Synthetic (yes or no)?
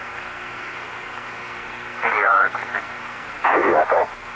yes